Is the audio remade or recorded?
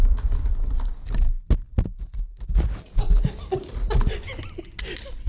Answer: recorded